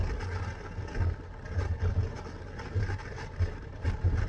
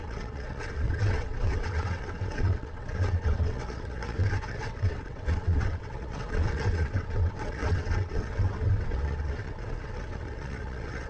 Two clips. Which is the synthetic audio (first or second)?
second